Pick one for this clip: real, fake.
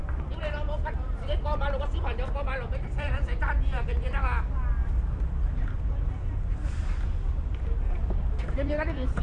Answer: fake